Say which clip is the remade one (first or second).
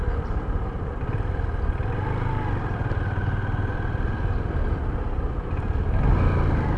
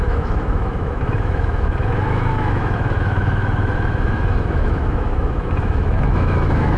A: second